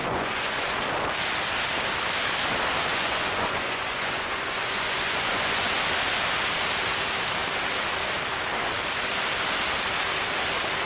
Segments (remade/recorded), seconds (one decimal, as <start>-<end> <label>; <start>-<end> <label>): 0.0-0.7 remade; 0.7-2.9 recorded; 2.9-5.7 remade; 5.7-10.9 recorded